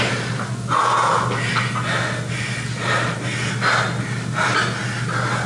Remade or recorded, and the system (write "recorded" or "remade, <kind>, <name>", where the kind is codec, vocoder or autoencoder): recorded